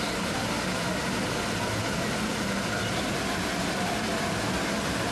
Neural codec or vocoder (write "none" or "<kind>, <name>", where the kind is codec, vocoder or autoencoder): none